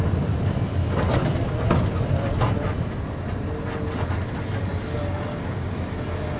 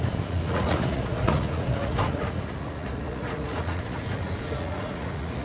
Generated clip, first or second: second